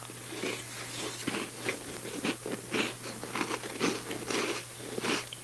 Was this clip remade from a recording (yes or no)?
no